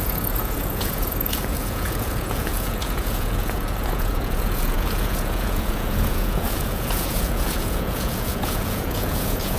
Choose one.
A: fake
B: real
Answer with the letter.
A